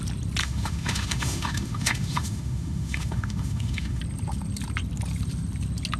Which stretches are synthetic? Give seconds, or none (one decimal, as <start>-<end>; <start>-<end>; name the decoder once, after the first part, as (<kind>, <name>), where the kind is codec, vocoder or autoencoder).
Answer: 0.4-4.0 (autoencoder, DAC-VAE)